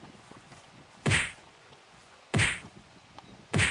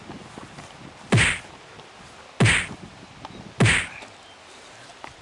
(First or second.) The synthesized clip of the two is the first